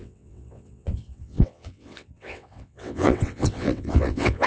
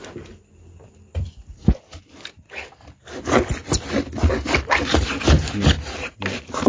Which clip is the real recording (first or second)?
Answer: second